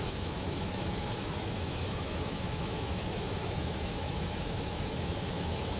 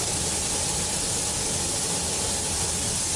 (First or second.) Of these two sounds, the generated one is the first